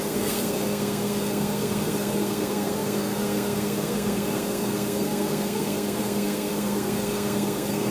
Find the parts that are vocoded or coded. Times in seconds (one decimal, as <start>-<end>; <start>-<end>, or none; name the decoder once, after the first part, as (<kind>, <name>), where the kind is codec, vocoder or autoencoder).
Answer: 0.0-7.9 (codec, SNAC)